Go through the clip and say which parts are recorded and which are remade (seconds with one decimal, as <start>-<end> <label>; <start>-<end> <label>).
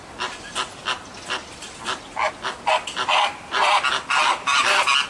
0.0-5.1 recorded